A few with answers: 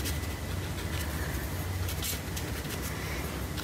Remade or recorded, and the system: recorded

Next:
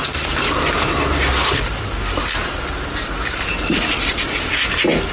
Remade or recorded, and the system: recorded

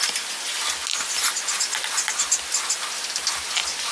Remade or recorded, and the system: recorded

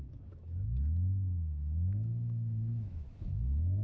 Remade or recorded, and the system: remade, autoencoder, DAC-VAE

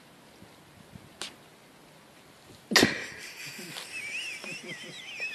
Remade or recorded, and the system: recorded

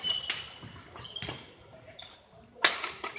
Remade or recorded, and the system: recorded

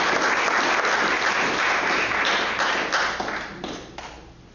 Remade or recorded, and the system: recorded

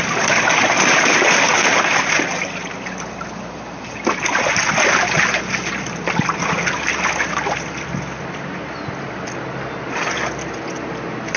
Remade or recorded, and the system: recorded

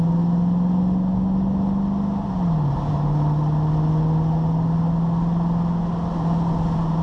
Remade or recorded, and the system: recorded